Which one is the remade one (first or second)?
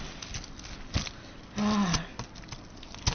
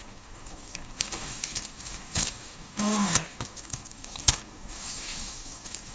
second